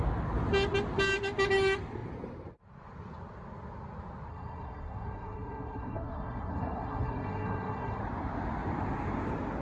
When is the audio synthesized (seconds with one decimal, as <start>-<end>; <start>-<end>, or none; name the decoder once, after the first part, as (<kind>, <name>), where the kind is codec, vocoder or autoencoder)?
4.3-8.0 (codec, SNAC)